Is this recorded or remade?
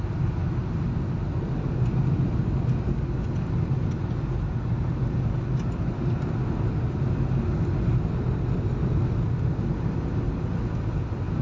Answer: recorded